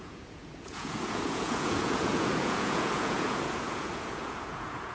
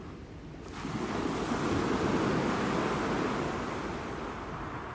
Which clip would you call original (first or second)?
second